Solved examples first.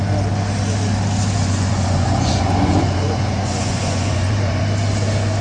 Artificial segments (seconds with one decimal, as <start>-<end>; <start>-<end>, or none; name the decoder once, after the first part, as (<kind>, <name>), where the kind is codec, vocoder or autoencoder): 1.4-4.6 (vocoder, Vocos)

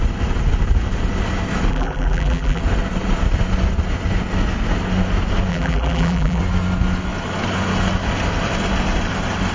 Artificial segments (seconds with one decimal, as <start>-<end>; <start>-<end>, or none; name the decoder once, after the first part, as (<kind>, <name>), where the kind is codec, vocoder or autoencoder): 1.7-2.6 (vocoder, BigVGAN v2); 5.5-6.4

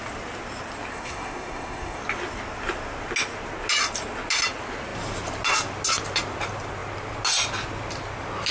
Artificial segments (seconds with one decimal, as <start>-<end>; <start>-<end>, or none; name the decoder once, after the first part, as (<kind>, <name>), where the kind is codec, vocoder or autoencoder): 0.9-2.0 (codec, SNAC)

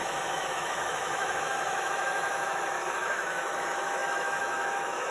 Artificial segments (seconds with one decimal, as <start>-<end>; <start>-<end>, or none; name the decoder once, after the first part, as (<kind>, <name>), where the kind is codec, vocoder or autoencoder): 0.0-5.1 (autoencoder, DAC-VAE)

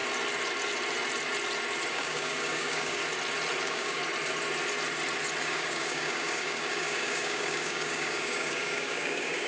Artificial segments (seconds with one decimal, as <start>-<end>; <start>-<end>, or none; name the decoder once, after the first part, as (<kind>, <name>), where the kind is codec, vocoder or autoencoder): 1.9-3.0 (codec, DAC); 3.6-4.0; 5.4-9.5